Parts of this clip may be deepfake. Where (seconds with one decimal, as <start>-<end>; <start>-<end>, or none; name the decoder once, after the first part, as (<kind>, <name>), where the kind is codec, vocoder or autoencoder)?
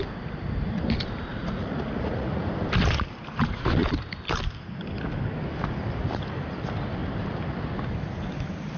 1.3-2.5 (vocoder, Vocos)